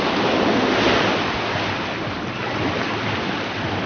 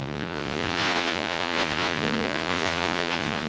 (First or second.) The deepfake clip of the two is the second